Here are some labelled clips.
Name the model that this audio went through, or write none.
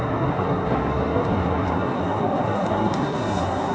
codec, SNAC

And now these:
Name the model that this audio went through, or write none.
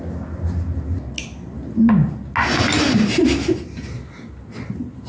none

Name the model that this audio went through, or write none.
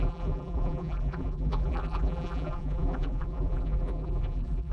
vocoder, BigVGAN v2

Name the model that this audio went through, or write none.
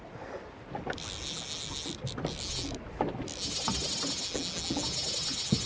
none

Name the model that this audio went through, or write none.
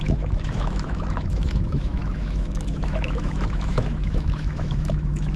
autoencoder, DAC-VAE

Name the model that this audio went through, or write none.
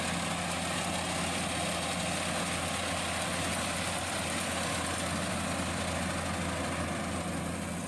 none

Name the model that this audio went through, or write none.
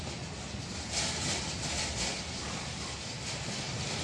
none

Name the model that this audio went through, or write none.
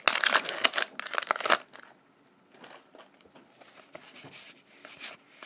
none